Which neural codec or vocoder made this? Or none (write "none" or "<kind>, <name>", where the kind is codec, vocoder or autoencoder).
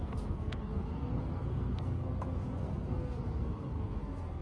codec, SNAC